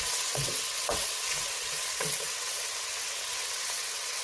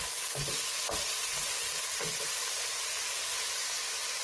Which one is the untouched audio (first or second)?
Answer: second